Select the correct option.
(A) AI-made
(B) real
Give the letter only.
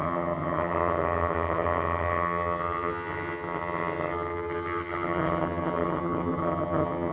A